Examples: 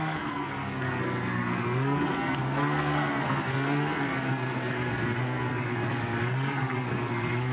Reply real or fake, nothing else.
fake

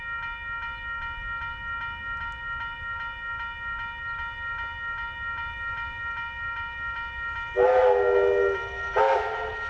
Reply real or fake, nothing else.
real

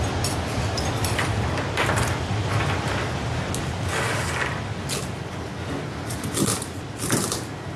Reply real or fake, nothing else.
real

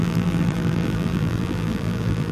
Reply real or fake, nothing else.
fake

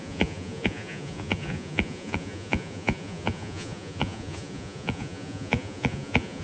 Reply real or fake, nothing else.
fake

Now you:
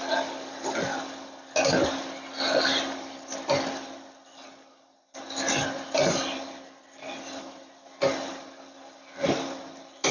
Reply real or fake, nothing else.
real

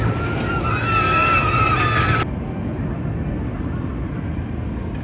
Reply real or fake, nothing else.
real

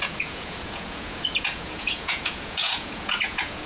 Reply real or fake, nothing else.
fake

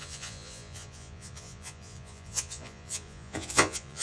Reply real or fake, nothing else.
fake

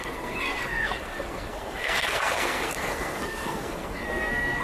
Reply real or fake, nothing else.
fake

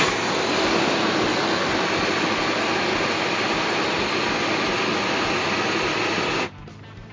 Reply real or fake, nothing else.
real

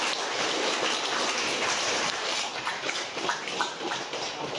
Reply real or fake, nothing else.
fake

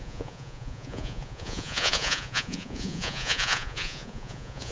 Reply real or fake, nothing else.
fake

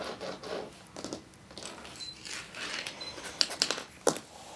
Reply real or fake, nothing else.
fake